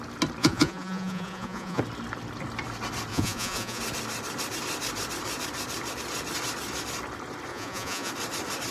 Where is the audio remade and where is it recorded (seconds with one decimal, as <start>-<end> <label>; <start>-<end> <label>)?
0.0-0.4 recorded; 0.4-1.8 remade; 1.8-3.1 recorded; 3.1-3.8 remade; 3.8-7.5 recorded; 7.5-8.1 remade; 8.1-8.7 recorded

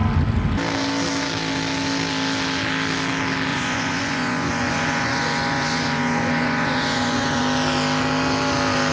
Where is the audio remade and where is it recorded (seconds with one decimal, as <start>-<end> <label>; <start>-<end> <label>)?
0.0-3.5 recorded; 3.5-7.4 remade; 7.4-8.9 recorded